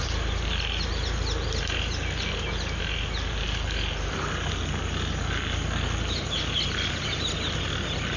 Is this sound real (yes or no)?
yes